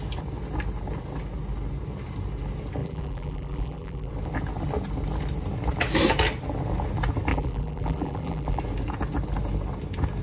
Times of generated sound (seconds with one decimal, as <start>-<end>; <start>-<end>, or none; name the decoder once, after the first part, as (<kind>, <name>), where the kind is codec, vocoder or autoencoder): 2.8-4.1 (vocoder, BigVGAN v2); 7.3-8.6